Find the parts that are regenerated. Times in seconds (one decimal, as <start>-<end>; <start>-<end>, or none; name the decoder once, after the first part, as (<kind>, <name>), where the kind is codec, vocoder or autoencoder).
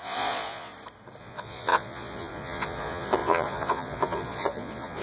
0.0-0.7 (vocoder, Vocos); 1.2-5.0